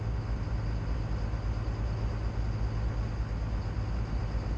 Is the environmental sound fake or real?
real